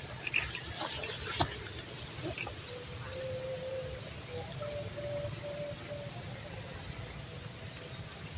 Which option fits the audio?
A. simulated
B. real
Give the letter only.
B